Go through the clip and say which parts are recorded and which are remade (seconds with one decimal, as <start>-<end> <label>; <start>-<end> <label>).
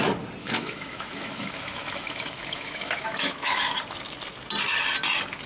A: 0.0-0.4 recorded; 0.4-3.7 remade; 3.7-5.5 recorded